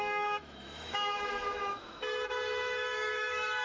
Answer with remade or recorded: remade